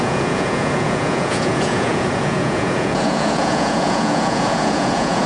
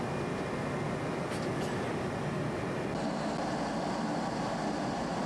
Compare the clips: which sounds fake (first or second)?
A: first